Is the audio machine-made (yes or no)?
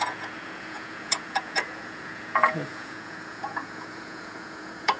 yes